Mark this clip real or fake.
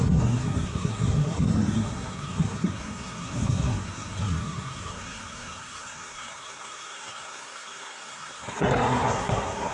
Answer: fake